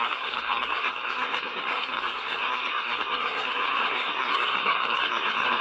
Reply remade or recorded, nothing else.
remade